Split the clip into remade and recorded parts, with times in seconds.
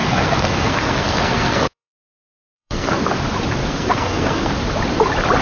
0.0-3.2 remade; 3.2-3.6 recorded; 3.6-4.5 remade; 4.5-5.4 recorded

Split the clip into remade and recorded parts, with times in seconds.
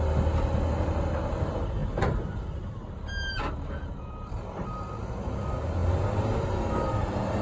0.0-7.4 recorded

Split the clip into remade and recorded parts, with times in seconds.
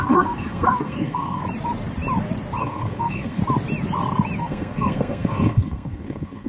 0.0-1.4 remade; 1.4-2.6 recorded; 2.6-3.4 remade; 3.4-4.4 recorded; 4.4-6.5 remade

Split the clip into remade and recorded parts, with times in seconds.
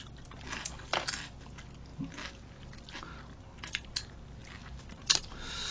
0.0-5.7 recorded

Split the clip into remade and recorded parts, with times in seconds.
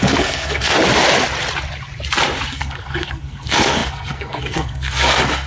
0.0-0.8 remade; 0.8-2.5 recorded; 2.5-5.5 remade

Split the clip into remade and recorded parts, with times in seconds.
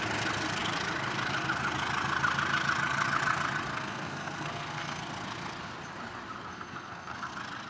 0.0-3.7 recorded; 3.7-5.0 remade; 5.0-6.5 recorded; 6.5-7.3 remade; 7.3-7.7 recorded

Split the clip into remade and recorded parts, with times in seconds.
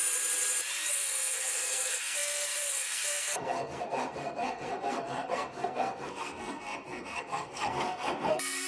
0.0-0.9 recorded; 0.9-8.7 remade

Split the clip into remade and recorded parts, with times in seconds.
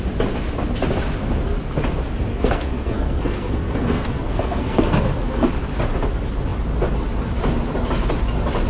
0.0-2.3 recorded; 2.3-5.5 remade; 5.5-8.7 recorded